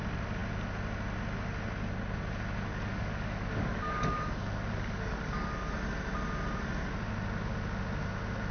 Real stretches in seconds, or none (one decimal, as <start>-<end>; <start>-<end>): 0.0-2.7; 5.7-8.5